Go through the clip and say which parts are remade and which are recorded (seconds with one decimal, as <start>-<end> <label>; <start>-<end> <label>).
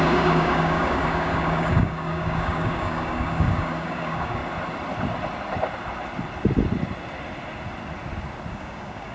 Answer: 0.0-4.4 remade; 4.4-8.5 recorded; 8.5-9.1 remade